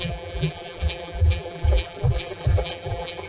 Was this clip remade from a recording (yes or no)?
yes